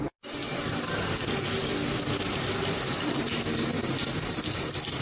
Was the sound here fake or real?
real